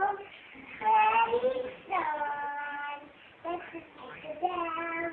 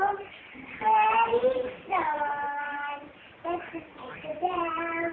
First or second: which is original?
first